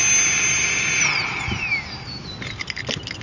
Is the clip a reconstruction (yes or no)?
no